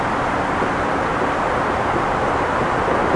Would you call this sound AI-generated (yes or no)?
no